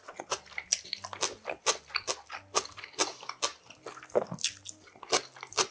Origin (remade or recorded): recorded